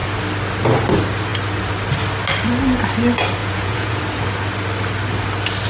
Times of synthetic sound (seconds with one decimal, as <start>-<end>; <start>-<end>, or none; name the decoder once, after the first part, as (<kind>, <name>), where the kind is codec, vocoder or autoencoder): 3.4-4.0 (vocoder, Vocos)